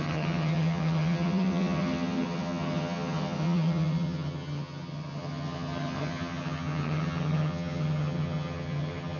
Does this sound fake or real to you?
fake